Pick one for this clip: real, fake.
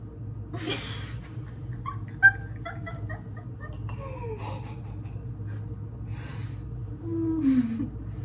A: real